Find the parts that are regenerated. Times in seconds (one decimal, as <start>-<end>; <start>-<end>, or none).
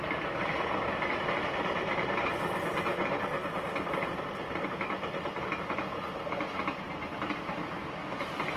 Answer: 1.4-2.3; 2.9-4.8